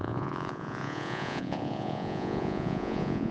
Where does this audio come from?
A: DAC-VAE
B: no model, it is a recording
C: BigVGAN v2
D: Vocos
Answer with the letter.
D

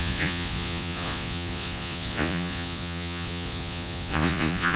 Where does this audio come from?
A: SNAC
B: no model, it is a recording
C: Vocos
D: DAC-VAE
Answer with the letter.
C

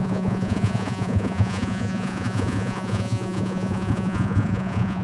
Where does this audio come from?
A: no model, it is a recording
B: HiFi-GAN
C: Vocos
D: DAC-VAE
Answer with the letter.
C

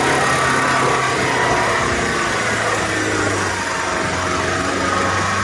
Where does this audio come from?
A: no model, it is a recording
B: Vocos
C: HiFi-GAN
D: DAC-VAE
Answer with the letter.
A